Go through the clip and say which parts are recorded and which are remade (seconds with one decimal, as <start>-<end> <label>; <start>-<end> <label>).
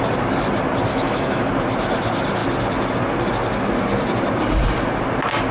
0.0-0.9 recorded; 0.9-1.5 remade; 1.5-5.5 recorded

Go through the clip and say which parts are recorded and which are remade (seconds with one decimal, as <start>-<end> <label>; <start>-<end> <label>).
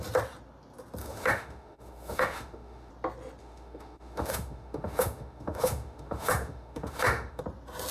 0.0-1.0 recorded; 1.0-2.9 remade; 2.9-3.4 recorded; 3.4-7.4 remade; 7.4-7.9 recorded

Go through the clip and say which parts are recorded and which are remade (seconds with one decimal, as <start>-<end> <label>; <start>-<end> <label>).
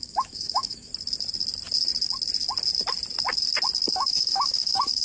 0.0-0.9 remade; 0.9-3.9 recorded; 3.9-5.0 remade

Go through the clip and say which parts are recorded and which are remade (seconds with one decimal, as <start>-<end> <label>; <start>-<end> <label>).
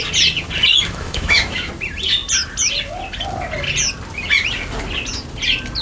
0.0-0.7 recorded; 0.7-1.7 remade; 1.7-5.8 recorded